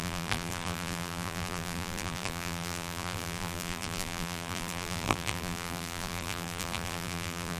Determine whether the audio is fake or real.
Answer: fake